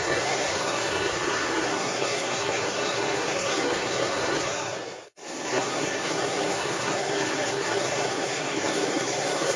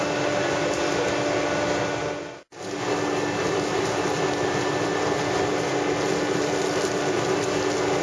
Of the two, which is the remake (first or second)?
first